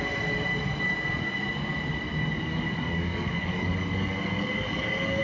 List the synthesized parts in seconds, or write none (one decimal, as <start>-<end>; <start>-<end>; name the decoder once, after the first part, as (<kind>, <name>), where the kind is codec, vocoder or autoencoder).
2.1-5.2 (codec, DAC)

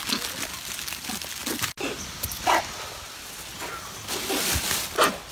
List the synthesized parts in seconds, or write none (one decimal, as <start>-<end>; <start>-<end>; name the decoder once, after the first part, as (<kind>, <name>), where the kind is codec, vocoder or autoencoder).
none

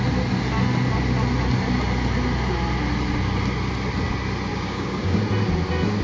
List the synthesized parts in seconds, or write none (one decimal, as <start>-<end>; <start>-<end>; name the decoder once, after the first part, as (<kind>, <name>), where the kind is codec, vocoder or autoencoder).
4.5-5.2 (codec, DAC)

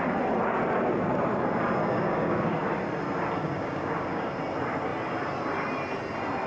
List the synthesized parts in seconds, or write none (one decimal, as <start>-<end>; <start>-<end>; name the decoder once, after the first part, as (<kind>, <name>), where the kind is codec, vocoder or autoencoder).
1.8-2.6 (codec, DAC); 3.4-4.3